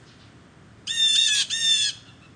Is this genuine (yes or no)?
no